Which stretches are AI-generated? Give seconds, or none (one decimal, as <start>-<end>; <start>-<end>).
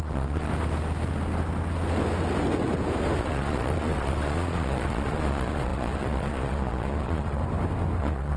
0.0-0.5; 3.2-7.4; 8.0-8.4